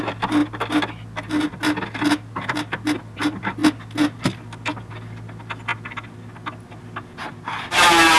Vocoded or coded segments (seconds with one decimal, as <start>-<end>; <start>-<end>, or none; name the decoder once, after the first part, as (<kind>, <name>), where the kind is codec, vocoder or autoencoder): none

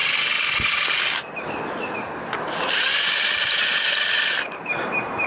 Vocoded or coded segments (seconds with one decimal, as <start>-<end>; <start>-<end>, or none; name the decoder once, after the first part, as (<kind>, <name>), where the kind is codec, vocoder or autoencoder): 3.2-5.3 (vocoder, BigVGAN v2)

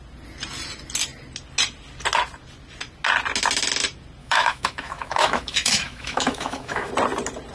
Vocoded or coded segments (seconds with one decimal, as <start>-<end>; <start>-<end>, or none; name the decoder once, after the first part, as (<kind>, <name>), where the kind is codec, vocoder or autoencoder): 4.2-6.9 (autoencoder, DAC-VAE)